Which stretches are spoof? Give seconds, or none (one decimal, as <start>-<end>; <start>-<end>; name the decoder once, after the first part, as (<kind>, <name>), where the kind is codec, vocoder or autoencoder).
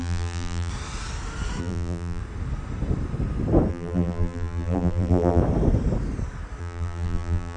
0.0-0.7 (vocoder, BigVGAN v2); 1.6-2.2; 3.7-5.4; 6.6-7.6